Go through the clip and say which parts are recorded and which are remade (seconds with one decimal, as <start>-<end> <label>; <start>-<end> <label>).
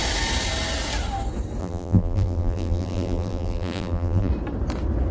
0.0-1.6 recorded; 1.6-4.3 remade; 4.3-5.1 recorded